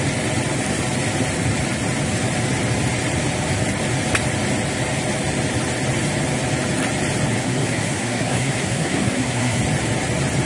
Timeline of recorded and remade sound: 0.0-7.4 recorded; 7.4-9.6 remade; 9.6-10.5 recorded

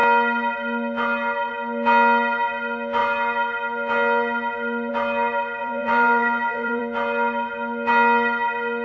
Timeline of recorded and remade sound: 0.0-5.6 recorded; 5.6-6.8 remade; 6.8-8.8 recorded

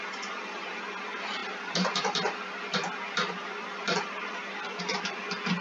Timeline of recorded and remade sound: 0.0-5.6 remade

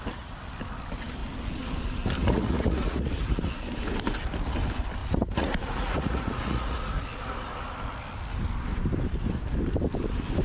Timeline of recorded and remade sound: 0.0-2.2 recorded; 2.2-3.2 remade; 3.2-5.0 recorded; 5.0-6.9 remade; 6.9-10.4 recorded

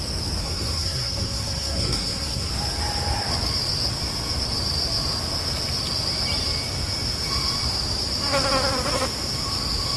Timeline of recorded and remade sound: 0.0-0.4 recorded; 0.4-2.5 remade; 2.5-10.0 recorded

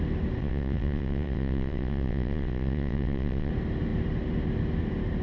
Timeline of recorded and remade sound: 0.0-0.4 recorded; 0.4-3.5 remade; 3.5-5.2 recorded